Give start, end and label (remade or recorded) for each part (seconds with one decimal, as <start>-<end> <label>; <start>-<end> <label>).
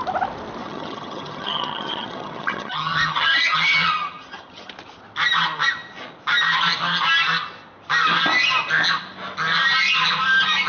0.0-0.6 recorded; 0.6-4.7 remade; 4.7-10.7 recorded